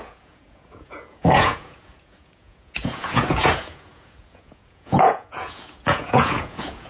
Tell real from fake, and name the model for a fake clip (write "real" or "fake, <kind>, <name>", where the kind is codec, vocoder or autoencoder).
fake, vocoder, Vocos